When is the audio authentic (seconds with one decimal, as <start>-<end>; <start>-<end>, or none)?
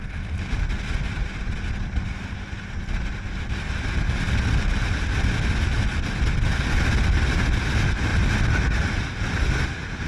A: 0.0-10.1